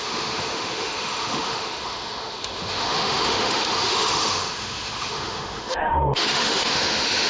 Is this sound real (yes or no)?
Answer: no